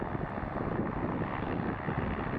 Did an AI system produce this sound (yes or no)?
no